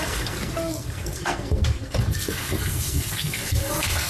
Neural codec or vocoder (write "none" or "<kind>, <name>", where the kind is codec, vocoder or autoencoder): codec, SNAC